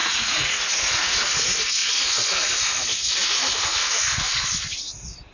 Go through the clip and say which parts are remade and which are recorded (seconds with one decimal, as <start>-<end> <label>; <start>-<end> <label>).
0.0-1.3 remade; 1.3-5.3 recorded